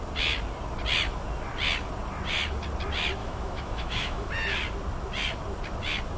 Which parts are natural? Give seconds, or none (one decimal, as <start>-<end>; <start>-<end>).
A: 0.0-3.2; 4.3-6.2